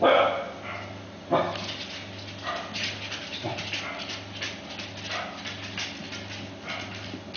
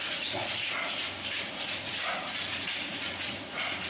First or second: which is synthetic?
second